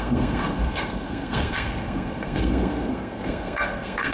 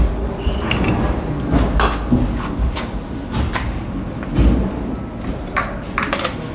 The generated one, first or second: first